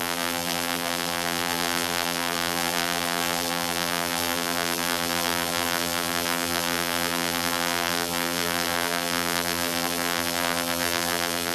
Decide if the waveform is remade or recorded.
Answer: remade